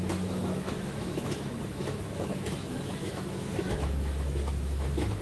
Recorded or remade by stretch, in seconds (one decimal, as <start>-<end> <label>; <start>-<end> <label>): 0.0-5.2 remade